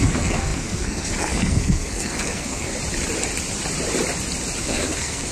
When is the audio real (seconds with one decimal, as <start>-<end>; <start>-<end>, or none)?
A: 2.7-4.6